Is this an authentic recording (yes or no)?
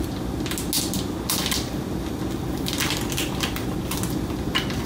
yes